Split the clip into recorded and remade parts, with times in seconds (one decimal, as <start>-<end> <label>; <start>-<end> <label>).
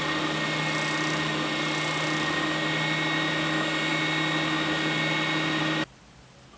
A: 0.0-6.6 recorded